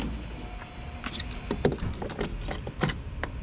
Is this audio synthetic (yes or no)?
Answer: no